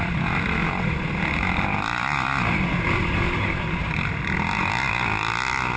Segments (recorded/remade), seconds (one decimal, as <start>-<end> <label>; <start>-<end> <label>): 0.0-5.8 recorded